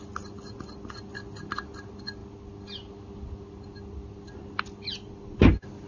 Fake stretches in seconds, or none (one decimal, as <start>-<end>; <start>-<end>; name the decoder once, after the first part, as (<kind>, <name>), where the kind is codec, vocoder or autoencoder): none